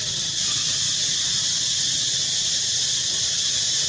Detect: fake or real real